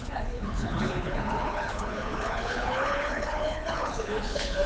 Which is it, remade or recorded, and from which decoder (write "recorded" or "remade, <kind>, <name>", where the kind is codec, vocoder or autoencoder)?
remade, codec, HILCodec